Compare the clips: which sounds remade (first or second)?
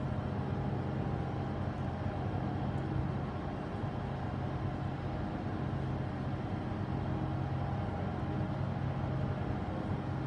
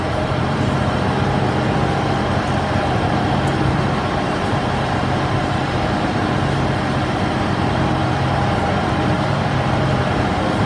second